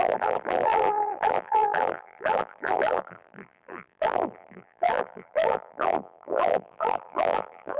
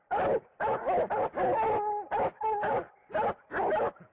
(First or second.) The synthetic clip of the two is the first